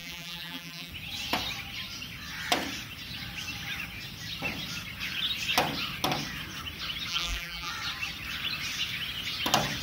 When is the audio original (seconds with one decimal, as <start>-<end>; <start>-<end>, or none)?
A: 0.9-7.1; 7.7-9.8